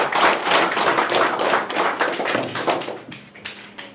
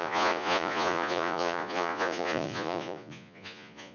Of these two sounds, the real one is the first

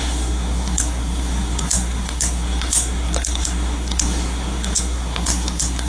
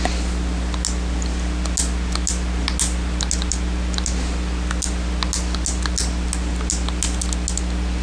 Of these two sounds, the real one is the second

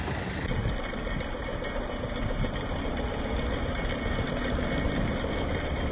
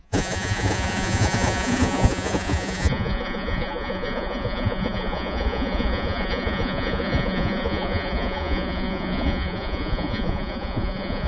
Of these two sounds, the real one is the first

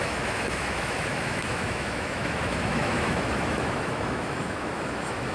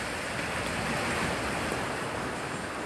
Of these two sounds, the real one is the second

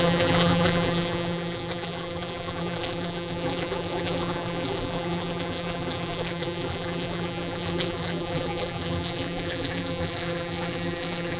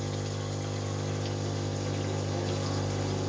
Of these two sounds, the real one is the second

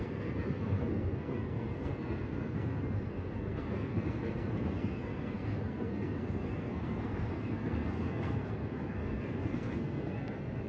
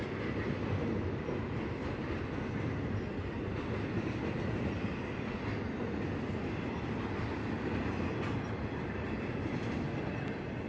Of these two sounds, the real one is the second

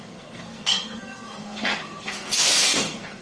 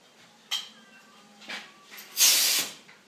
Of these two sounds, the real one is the second